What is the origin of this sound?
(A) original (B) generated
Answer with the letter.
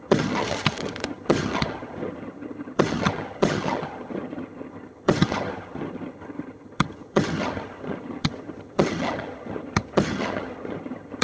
B